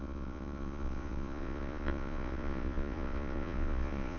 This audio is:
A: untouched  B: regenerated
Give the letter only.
B